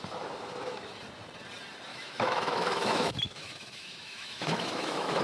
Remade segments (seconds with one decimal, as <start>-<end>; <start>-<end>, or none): 1.9-5.2